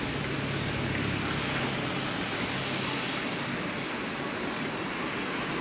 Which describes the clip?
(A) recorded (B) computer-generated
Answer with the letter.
A